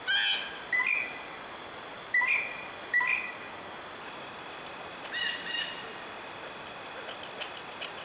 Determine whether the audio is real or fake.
real